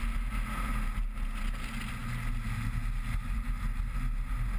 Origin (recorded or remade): recorded